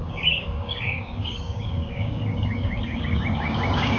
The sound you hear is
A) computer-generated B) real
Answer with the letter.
A